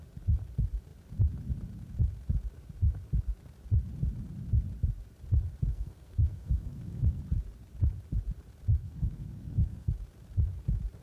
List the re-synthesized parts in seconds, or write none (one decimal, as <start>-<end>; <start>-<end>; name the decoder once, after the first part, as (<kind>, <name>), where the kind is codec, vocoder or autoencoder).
5.7-7.2 (codec, SNAC); 8.8-9.9